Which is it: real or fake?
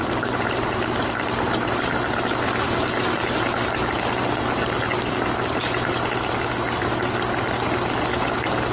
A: real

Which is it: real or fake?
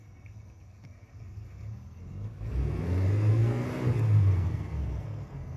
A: fake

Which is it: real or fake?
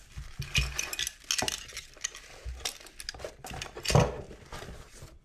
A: real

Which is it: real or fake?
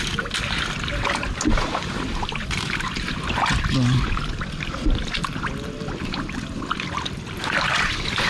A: fake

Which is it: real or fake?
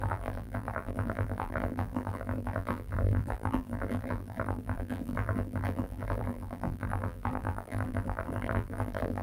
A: fake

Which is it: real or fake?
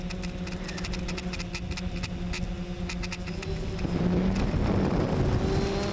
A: real